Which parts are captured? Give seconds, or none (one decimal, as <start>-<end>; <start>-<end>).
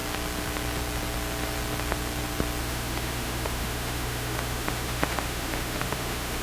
0.0-2.6